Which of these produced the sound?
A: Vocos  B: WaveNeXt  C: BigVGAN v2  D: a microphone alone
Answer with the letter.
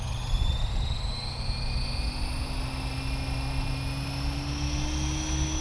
D